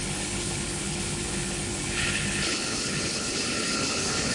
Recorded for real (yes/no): no